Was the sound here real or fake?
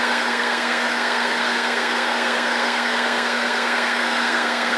fake